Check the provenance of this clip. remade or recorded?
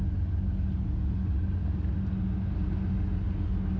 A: recorded